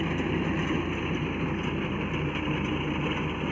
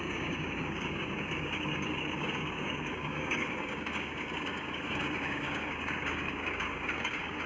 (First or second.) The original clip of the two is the first